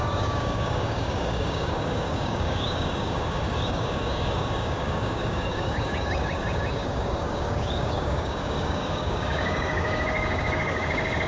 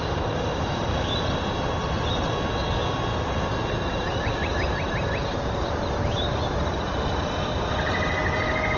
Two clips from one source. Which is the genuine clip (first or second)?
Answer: second